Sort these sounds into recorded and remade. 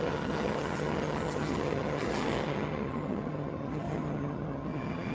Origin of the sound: remade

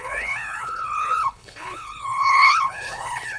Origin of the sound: remade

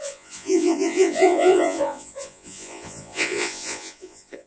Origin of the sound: remade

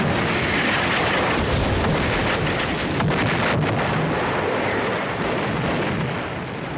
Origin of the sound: recorded